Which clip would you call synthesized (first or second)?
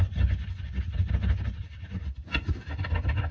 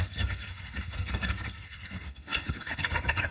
second